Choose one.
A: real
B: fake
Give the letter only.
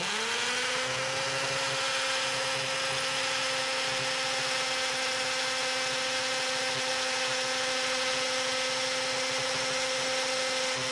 A